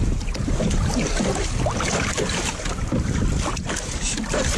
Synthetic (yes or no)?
yes